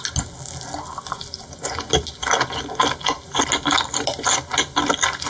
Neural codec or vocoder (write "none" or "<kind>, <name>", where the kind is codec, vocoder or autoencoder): none